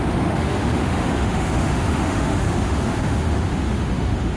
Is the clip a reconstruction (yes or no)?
yes